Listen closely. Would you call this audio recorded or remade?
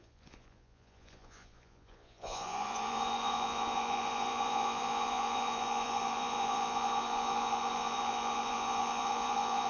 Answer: remade